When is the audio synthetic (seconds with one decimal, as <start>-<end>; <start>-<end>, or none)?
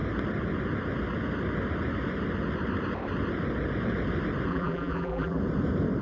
4.5-5.4